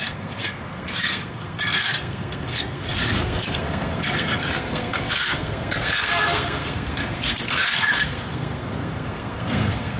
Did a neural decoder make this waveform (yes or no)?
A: yes